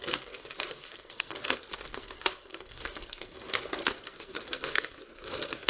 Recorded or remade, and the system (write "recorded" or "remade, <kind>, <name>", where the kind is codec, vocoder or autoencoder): remade, codec, SNAC